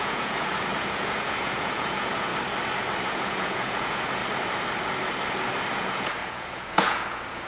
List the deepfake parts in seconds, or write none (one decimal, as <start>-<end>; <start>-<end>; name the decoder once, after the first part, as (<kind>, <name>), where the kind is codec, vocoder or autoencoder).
0.0-2.3 (vocoder, Vocos); 3.1-4.2; 5.7-7.5

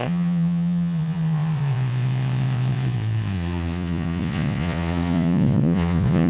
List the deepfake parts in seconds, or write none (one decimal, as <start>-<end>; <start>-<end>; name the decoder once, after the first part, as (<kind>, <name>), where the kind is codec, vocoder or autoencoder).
0.0-6.3 (vocoder, Vocos)

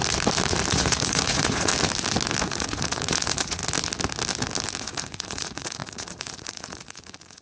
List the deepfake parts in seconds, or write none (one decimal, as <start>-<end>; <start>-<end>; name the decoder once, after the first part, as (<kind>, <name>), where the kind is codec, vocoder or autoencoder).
0.7-1.7 (vocoder, Vocos); 2.4-3.6; 4.8-7.4

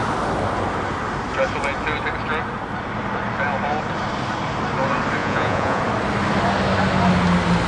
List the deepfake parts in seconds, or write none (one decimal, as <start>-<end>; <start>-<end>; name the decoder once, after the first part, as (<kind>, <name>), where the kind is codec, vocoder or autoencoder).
5.2-5.8 (vocoder, Vocos)

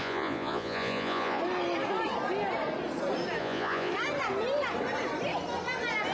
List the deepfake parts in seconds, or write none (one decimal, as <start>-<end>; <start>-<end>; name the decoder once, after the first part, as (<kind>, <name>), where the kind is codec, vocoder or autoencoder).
0.0-1.4 (vocoder, Vocos); 3.4-3.9

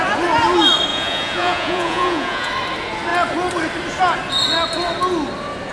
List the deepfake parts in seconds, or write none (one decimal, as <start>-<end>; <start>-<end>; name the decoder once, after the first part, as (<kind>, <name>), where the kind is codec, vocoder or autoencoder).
0.9-2.5 (vocoder, Vocos)